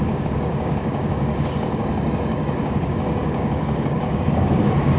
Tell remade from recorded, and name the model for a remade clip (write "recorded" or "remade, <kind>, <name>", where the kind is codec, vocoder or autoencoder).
remade, codec, DAC